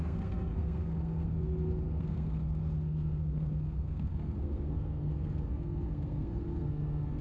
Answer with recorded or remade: remade